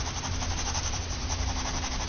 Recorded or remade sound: recorded